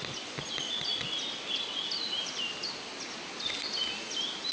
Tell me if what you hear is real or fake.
real